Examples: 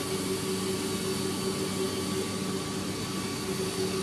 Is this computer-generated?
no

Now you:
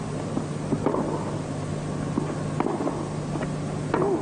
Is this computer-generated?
no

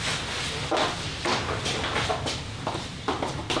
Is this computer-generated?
no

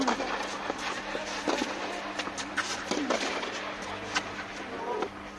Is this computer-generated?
no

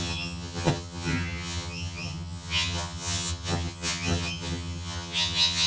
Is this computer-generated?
yes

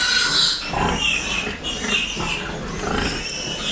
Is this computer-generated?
no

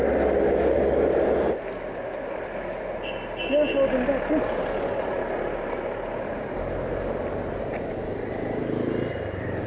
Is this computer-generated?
no